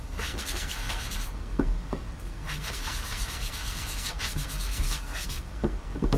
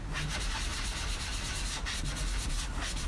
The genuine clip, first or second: second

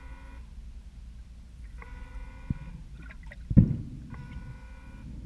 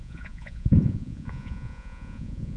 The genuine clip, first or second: first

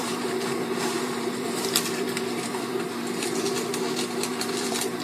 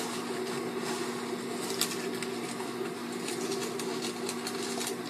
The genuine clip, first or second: second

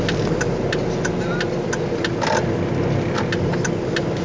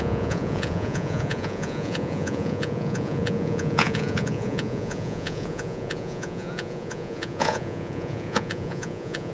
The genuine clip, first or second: first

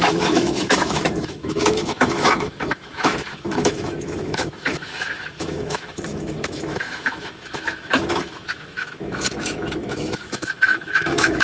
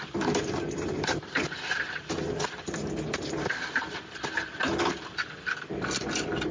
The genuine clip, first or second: second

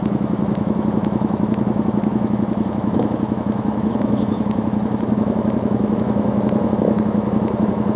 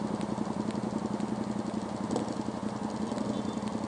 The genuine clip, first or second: second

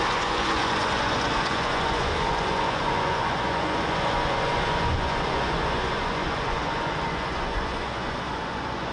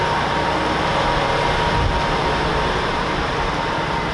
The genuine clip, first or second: second